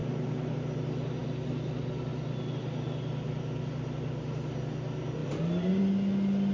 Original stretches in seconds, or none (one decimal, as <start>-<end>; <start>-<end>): 0.0-6.5